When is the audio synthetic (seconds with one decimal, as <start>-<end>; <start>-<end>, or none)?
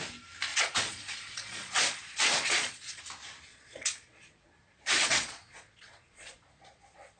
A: 0.5-3.0; 3.5-7.2